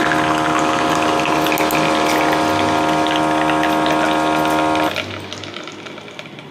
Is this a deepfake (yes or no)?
no